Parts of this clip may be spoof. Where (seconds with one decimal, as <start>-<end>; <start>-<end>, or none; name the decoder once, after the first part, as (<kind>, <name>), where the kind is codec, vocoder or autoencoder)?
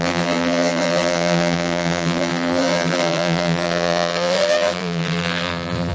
0.0-5.9 (vocoder, BigVGAN v2)